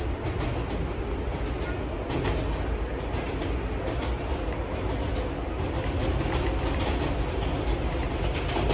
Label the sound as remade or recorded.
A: recorded